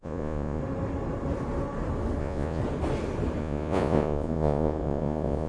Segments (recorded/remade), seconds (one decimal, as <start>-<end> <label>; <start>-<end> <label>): 0.0-0.6 remade; 0.6-2.2 recorded; 2.2-2.6 remade; 2.6-3.4 recorded; 3.4-5.5 remade